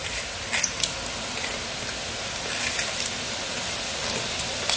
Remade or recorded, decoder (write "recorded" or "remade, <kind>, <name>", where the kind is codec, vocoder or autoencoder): recorded